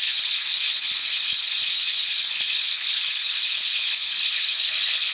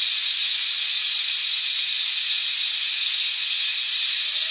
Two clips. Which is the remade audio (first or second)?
first